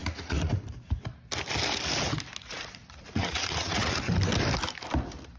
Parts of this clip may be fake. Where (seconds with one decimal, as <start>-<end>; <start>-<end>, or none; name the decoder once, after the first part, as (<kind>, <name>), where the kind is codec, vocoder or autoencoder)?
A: 0.0-0.5 (vocoder, Vocos); 2.4-4.1